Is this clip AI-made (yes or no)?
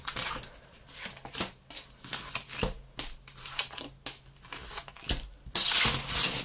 no